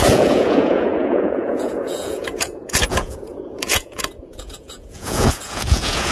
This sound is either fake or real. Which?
fake